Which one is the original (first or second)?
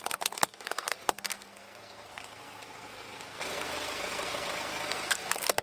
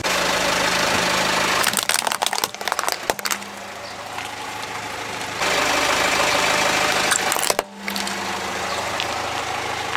second